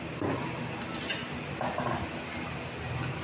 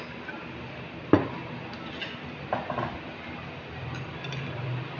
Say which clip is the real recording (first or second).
first